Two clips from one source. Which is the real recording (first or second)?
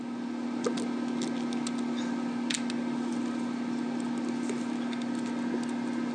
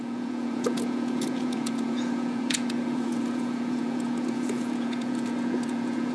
first